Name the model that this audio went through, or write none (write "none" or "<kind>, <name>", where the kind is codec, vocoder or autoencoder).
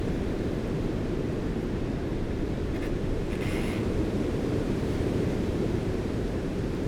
vocoder, BigVGAN v2